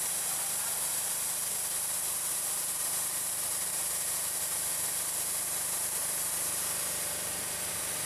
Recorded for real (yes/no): no